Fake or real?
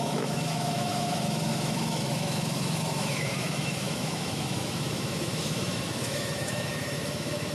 fake